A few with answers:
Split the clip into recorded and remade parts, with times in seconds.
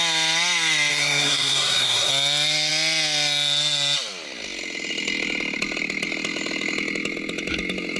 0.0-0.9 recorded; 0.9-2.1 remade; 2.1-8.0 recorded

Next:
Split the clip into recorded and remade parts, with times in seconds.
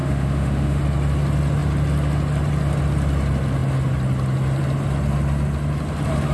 0.0-0.8 remade; 0.8-6.3 recorded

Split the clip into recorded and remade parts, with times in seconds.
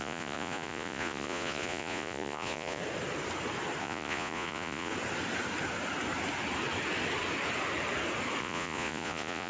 0.0-2.8 remade; 2.8-3.8 recorded; 3.8-4.9 remade; 4.9-8.4 recorded; 8.4-9.5 remade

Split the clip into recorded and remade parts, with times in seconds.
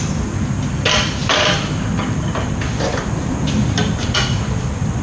0.0-5.0 recorded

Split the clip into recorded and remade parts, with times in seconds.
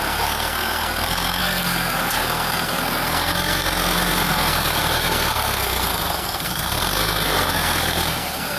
0.0-8.6 remade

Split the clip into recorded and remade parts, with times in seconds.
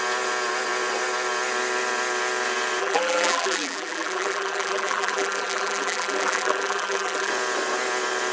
0.0-2.8 recorded; 2.8-7.3 remade; 7.3-8.3 recorded